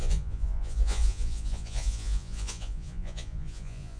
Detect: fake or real fake